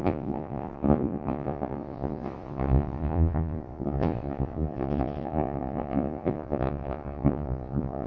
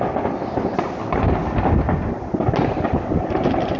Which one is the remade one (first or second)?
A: first